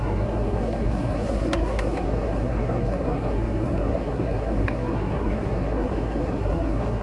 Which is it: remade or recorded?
remade